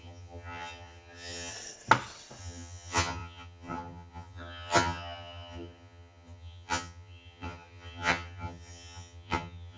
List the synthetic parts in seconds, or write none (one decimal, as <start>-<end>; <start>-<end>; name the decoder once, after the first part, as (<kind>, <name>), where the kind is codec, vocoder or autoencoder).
0.0-1.5 (vocoder, HiFi-GAN); 2.4-9.8